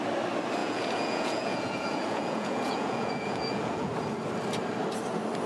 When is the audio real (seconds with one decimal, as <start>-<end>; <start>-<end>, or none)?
0.0-0.6; 3.9-5.5